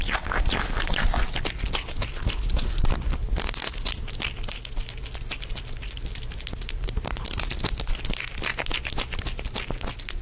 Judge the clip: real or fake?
real